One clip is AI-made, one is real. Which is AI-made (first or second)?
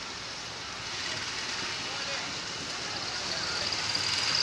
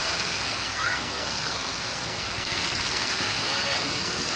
second